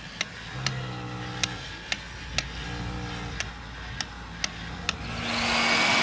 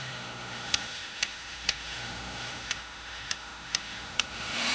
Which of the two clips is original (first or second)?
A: first